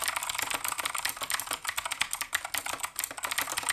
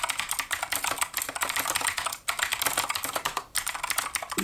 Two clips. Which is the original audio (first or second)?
first